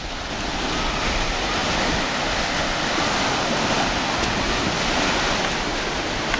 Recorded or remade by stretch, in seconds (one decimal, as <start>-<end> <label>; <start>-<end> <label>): 0.0-6.4 recorded